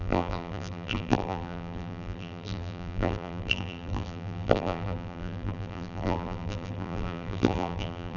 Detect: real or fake fake